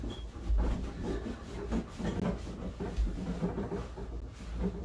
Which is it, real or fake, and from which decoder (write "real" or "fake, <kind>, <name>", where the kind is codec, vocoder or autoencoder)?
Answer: real